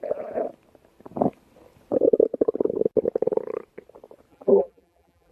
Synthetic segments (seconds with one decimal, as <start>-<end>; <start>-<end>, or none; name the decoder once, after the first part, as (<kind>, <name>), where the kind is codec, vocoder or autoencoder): 4.3-5.3 (vocoder, BigVGAN v2)